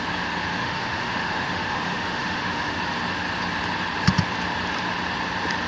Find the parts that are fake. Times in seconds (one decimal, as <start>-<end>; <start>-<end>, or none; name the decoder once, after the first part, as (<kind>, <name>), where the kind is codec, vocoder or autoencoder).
0.5-2.8 (autoencoder, DAC-VAE)